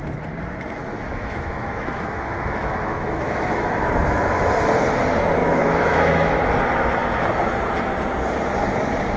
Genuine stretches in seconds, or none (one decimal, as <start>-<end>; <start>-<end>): 0.0-0.8; 4.5-5.4; 6.4-9.2